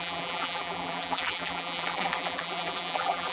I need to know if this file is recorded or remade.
remade